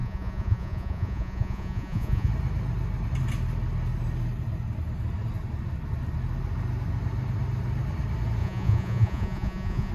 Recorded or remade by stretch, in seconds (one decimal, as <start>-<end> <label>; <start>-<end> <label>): 0.0-2.3 remade; 2.3-8.4 recorded; 8.4-9.9 remade